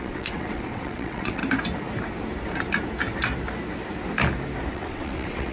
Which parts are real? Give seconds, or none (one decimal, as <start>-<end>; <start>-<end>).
1.4-4.7